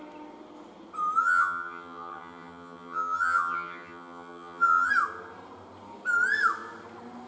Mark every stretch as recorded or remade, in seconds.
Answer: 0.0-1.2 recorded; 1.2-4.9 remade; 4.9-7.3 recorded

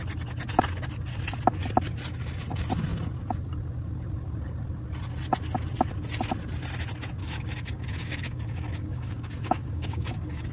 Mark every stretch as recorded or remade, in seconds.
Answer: 0.0-7.2 recorded; 7.2-10.5 remade

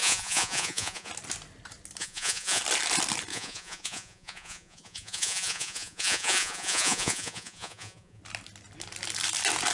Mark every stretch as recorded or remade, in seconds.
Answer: 0.0-1.1 remade; 1.1-2.0 recorded; 2.0-2.6 remade; 2.6-3.3 recorded; 3.3-8.2 remade; 8.2-9.7 recorded

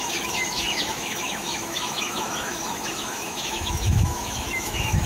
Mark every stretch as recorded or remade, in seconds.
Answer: 0.0-5.1 remade